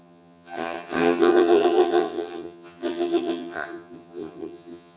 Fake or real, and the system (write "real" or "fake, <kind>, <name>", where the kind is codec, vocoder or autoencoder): fake, vocoder, HiFi-GAN